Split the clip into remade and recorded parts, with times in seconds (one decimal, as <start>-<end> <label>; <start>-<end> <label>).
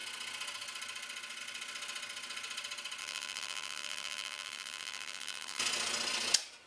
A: 0.0-3.0 recorded; 3.0-5.6 remade; 5.6-6.7 recorded